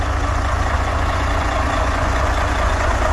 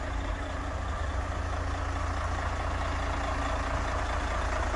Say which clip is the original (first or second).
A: second